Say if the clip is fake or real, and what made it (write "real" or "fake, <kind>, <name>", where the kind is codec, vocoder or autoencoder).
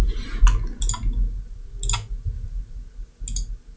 real